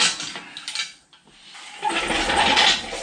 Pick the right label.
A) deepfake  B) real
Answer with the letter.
B